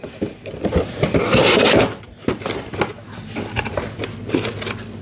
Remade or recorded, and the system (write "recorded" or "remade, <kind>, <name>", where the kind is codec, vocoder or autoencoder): recorded